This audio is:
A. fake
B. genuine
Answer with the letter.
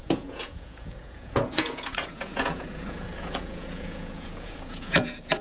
A